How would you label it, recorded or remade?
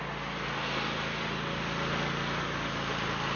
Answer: recorded